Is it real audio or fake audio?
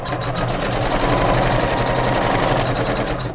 real